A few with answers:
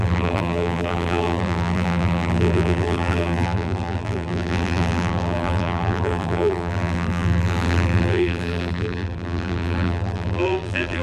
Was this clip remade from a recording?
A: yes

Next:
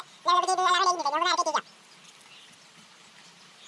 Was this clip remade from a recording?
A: no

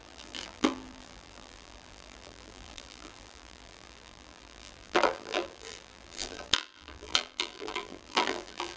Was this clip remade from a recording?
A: yes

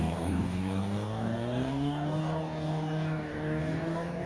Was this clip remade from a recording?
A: yes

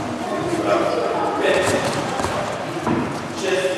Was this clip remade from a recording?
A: no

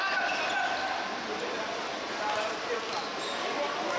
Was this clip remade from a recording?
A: no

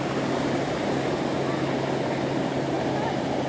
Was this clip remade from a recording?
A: no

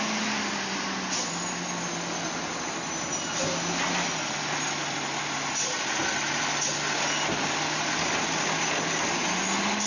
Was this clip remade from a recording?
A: no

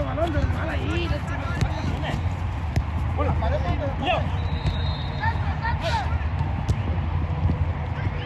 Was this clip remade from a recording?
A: no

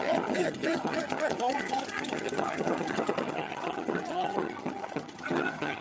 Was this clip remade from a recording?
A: yes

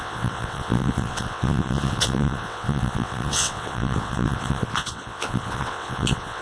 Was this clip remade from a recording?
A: yes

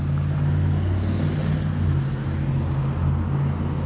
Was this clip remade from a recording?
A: no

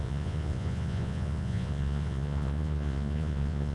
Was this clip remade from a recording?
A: yes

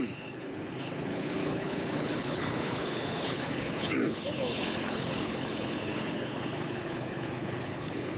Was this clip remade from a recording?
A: yes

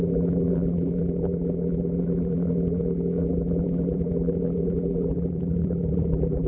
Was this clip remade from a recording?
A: yes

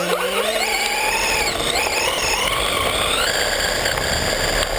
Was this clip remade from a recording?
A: no